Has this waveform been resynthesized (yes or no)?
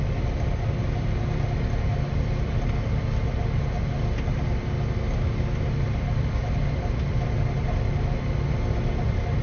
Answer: no